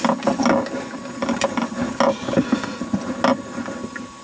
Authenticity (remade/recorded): recorded